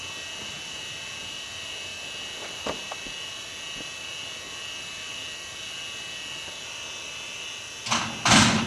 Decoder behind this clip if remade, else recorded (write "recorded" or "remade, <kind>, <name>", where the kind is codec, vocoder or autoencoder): recorded